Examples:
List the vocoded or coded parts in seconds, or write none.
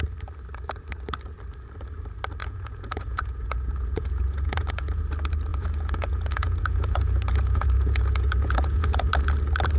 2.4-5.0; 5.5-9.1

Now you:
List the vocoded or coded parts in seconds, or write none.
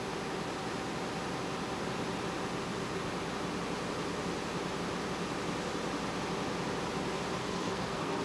7.4-8.2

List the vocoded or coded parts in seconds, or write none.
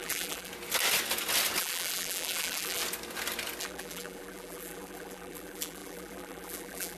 0.0-0.5; 1.6-2.8; 3.6-7.0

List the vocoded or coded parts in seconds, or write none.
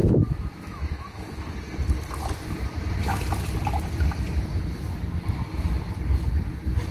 0.0-1.5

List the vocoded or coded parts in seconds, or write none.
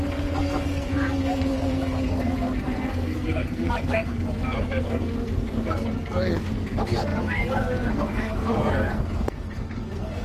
0.0-10.2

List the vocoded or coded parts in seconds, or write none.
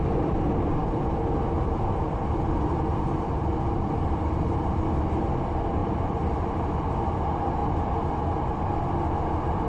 none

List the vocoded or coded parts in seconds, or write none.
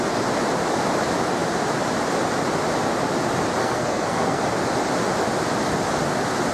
3.6-4.4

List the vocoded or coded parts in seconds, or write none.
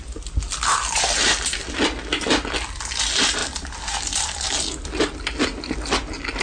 none